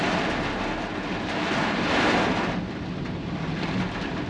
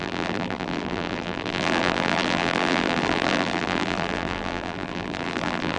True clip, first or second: first